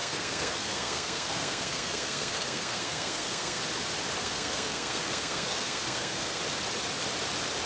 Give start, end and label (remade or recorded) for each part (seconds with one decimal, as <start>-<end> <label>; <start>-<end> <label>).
0.0-3.6 remade; 3.6-4.2 recorded; 4.2-6.4 remade; 6.4-7.7 recorded